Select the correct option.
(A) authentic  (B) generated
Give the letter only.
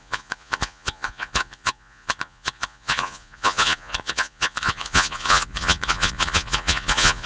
B